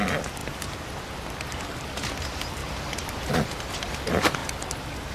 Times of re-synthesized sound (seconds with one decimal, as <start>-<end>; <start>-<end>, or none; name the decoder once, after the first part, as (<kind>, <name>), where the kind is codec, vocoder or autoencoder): none

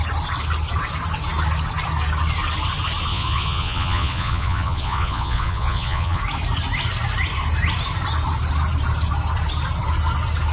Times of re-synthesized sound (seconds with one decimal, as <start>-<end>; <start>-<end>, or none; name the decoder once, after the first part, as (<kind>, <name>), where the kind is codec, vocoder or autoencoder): 3.1-6.2 (vocoder, Vocos)

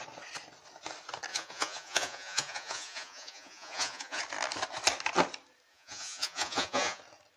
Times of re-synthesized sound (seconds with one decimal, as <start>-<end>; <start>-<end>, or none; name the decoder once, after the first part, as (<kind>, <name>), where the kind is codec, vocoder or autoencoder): 1.3-4.2 (vocoder, Vocos); 5.7-7.0

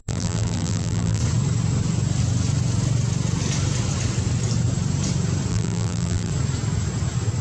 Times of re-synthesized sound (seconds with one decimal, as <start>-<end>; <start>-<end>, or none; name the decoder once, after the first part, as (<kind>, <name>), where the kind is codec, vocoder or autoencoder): 0.0-1.2 (vocoder, BigVGAN v2); 5.5-6.3

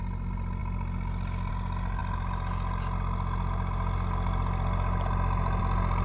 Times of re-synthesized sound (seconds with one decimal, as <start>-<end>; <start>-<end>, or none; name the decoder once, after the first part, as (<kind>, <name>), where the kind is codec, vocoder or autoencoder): none